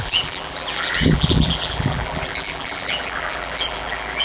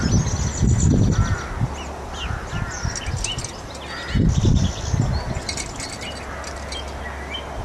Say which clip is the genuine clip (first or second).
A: second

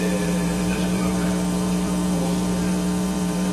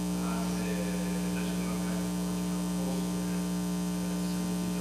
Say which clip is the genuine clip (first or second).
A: second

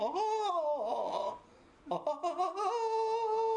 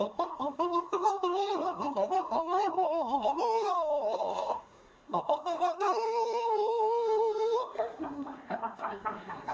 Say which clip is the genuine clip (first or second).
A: first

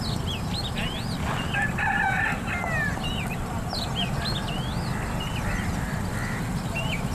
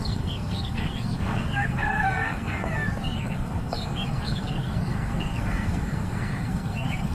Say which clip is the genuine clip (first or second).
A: first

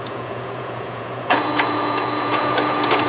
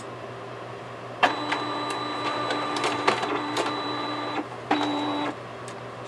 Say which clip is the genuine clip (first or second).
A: second